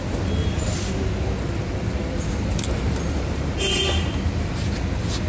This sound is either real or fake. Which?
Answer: real